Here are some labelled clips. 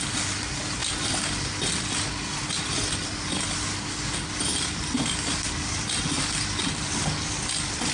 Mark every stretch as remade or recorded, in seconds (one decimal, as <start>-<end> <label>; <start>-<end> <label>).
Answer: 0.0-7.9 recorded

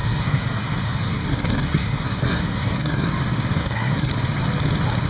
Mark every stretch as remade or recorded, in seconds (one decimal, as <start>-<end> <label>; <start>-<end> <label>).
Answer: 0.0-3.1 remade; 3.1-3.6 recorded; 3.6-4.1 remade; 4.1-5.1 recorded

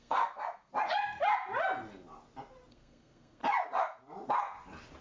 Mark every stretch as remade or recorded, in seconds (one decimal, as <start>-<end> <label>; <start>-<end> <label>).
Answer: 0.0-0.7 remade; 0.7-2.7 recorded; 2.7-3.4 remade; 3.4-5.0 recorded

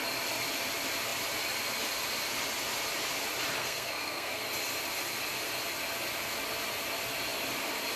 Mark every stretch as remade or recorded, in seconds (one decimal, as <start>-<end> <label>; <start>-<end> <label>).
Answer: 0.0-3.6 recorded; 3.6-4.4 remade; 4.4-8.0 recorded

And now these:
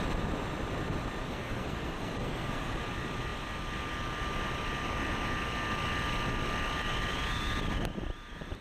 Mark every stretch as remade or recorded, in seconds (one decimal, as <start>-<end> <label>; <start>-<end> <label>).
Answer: 0.0-1.2 recorded; 1.2-2.8 remade; 2.8-8.6 recorded

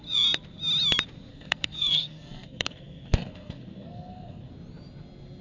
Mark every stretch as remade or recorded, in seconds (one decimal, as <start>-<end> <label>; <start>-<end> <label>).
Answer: 0.0-1.3 recorded; 1.3-4.5 remade; 4.5-5.4 recorded